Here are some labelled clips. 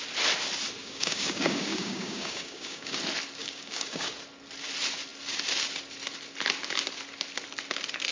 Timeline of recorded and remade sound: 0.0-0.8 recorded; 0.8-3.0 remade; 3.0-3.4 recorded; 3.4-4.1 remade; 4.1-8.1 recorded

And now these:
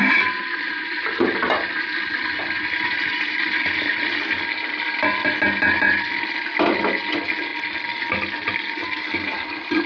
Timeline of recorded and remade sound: 0.0-9.9 recorded